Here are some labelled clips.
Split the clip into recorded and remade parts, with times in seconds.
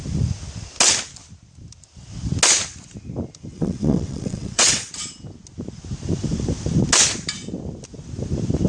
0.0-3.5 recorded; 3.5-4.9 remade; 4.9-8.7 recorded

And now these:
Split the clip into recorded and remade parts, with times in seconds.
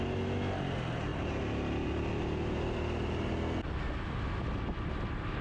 0.0-5.4 recorded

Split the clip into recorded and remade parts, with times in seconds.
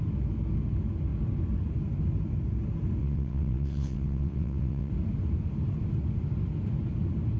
0.0-3.0 recorded; 3.0-4.9 remade; 4.9-7.4 recorded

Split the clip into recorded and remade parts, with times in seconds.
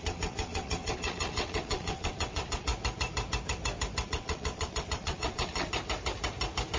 0.0-2.7 remade; 2.7-4.1 recorded; 4.1-5.7 remade; 5.7-6.8 recorded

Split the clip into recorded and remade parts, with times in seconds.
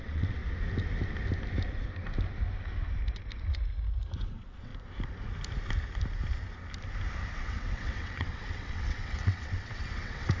0.0-0.4 remade; 0.4-4.2 recorded; 4.2-4.7 remade; 4.7-7.3 recorded; 7.3-10.4 remade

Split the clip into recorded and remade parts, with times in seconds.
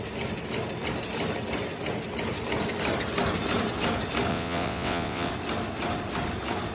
0.0-4.3 recorded; 4.3-5.3 remade; 5.3-6.7 recorded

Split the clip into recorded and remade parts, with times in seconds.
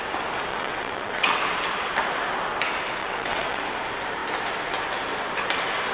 0.0-0.5 recorded; 0.5-1.4 remade; 1.4-3.0 recorded; 3.0-3.6 remade; 3.6-5.9 recorded